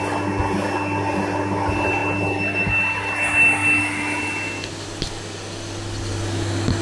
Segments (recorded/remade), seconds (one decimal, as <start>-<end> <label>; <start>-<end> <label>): 0.0-6.8 recorded